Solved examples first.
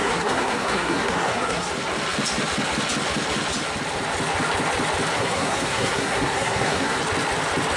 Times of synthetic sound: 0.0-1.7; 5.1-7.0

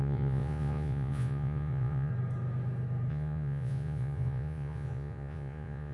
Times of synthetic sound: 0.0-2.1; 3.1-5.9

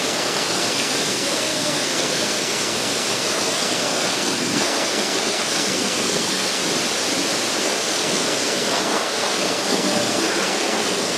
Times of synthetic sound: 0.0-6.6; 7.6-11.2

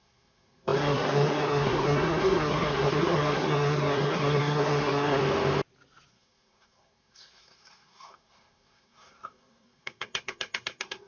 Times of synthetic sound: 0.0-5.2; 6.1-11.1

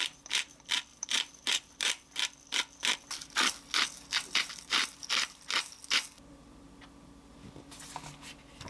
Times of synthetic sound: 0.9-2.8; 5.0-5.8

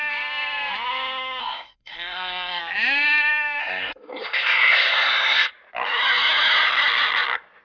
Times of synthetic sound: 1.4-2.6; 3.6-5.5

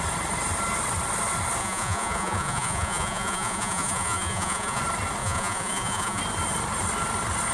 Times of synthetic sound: 1.6-4.8; 5.2-6.2

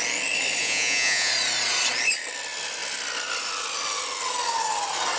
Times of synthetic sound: 0.6-1.3